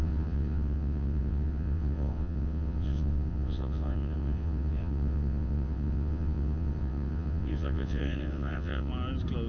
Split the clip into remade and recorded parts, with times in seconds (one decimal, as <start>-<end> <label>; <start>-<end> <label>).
0.0-8.9 remade; 8.9-9.5 recorded